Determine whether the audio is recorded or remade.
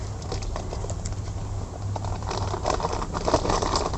recorded